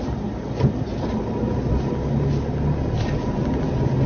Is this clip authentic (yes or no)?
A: yes